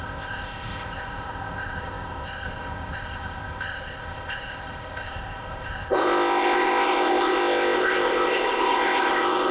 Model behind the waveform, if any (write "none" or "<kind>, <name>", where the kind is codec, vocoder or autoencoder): codec, ZipCodec